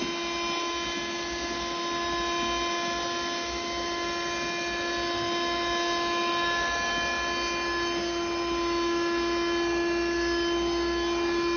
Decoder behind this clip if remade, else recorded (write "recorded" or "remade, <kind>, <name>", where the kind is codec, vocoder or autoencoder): recorded